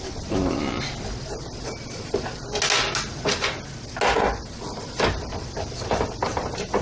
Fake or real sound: real